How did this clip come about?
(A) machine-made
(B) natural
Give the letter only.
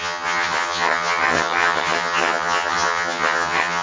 A